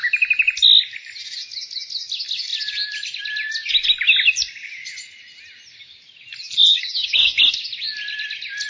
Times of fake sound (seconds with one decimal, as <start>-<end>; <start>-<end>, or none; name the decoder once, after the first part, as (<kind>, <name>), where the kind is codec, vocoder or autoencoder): 6.7-7.5 (codec, DAC)